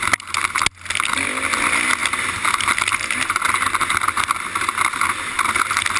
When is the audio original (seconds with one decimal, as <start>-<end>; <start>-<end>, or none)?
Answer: 0.0-6.0